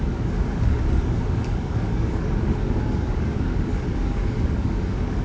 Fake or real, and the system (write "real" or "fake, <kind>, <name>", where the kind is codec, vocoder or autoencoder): fake, codec, DAC